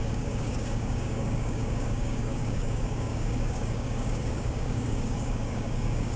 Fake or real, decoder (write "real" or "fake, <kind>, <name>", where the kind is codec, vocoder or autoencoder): fake, codec, DAC